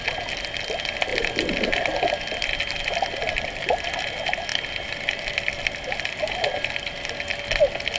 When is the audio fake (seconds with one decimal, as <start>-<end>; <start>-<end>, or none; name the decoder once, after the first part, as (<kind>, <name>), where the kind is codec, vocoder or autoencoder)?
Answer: 1.1-3.9 (vocoder, BigVGAN v2); 4.5-7.1